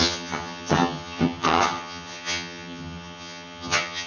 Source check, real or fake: fake